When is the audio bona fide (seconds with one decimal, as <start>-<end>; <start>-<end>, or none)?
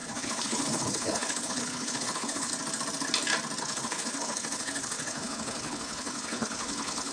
2.5-3.6